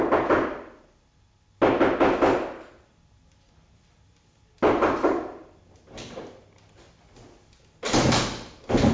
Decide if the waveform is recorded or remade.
recorded